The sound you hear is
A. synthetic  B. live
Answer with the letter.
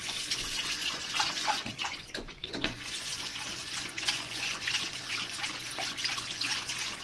A